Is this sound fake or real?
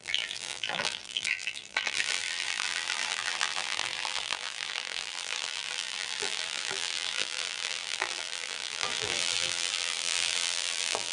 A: fake